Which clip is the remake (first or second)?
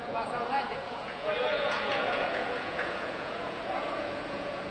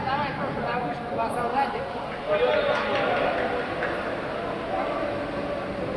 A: first